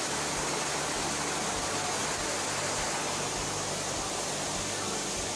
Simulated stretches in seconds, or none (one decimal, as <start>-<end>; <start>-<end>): none